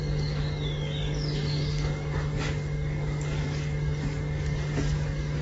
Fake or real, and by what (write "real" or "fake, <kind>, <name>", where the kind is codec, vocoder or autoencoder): fake, codec, DAC